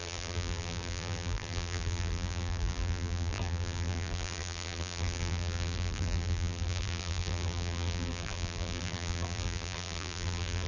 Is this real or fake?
fake